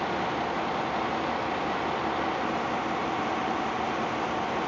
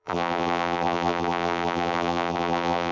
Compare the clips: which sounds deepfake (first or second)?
second